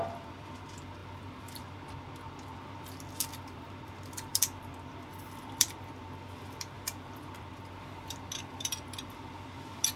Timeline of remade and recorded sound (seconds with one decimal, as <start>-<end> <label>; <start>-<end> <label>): 0.0-10.0 remade